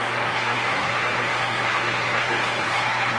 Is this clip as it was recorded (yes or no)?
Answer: no